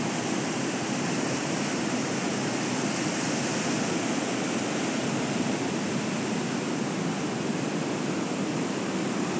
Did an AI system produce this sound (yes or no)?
no